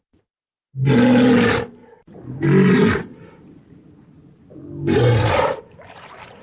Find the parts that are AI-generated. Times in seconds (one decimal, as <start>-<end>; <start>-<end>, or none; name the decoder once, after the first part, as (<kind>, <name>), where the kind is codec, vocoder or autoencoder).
none